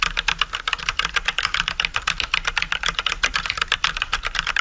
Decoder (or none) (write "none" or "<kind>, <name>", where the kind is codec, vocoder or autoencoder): none